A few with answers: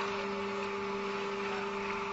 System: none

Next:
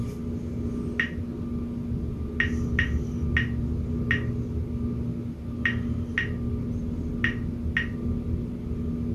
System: none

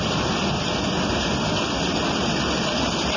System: none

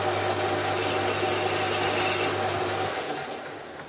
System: none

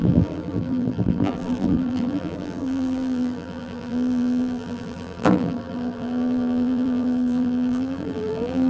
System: vocoder, BigVGAN v2